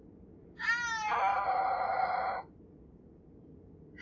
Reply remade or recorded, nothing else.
recorded